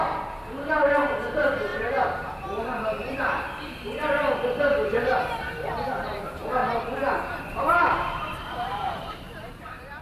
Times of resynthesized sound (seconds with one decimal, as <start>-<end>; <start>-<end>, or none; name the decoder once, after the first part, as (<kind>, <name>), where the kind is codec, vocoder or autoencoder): 0.0-1.7 (vocoder, BigVGAN v2); 2.6-6.6; 7.5-10.0